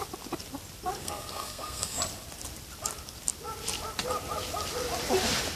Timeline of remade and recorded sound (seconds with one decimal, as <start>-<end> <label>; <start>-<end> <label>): 0.0-1.0 recorded; 1.0-2.0 remade; 2.0-5.6 recorded